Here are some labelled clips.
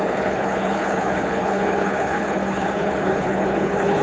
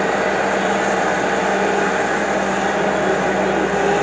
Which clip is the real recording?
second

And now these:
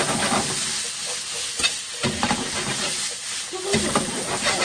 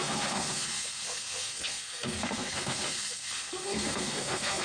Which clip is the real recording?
first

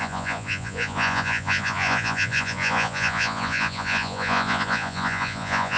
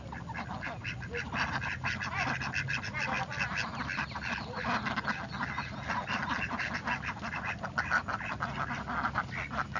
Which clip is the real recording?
second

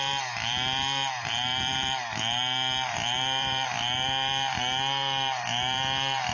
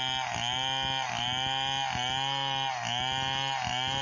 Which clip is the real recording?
second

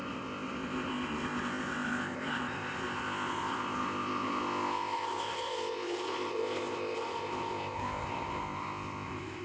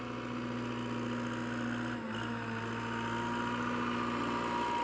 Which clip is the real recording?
second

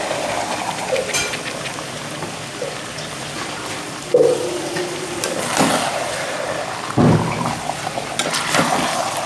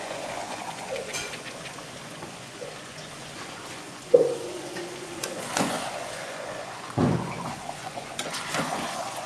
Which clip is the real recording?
first